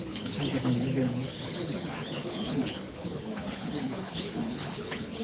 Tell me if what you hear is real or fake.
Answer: fake